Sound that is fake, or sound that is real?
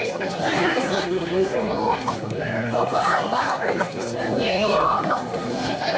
fake